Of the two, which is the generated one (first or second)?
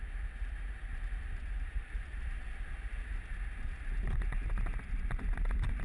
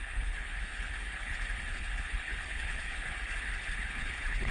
second